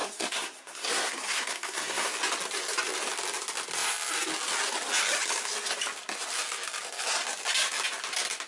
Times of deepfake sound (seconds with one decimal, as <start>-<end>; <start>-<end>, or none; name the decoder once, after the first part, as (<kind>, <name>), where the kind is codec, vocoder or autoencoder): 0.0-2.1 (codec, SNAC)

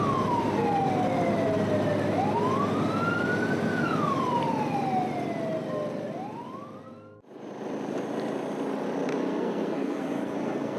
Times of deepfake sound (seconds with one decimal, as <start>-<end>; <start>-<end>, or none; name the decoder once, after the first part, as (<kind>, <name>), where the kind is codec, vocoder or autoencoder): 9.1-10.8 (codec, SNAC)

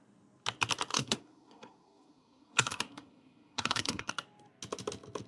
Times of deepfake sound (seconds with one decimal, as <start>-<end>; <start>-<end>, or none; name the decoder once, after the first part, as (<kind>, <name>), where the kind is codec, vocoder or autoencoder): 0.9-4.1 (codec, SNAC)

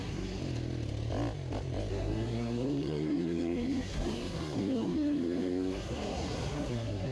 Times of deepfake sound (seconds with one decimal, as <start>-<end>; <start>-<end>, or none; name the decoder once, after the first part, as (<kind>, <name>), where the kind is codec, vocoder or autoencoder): 0.0-0.4 (codec, SNAC); 1.9-7.1